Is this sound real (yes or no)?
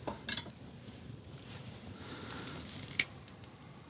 no